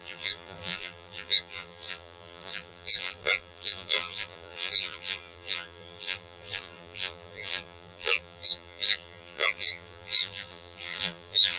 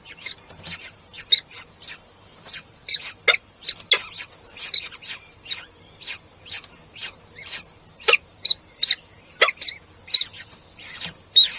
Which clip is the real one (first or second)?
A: second